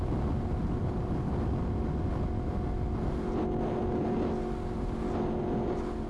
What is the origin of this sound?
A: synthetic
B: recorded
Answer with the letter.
B